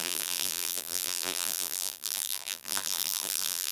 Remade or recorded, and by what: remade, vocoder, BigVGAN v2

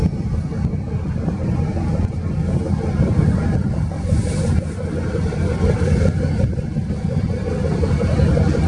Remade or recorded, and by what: recorded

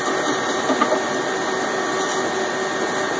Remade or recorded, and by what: recorded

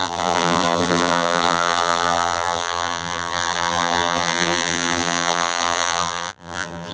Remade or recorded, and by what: remade, vocoder, BigVGAN v2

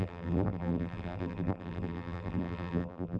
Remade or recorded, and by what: remade, vocoder, BigVGAN v2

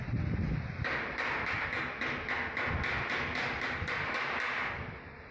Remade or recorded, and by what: recorded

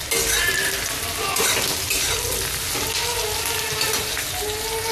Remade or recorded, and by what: recorded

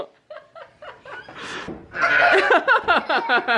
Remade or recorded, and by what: recorded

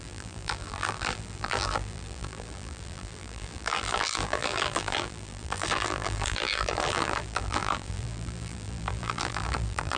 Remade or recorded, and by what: remade, vocoder, BigVGAN v2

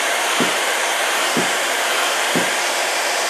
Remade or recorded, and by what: remade, vocoder, BigVGAN v2